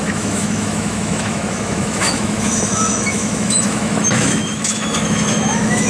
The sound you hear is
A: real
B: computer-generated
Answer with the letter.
B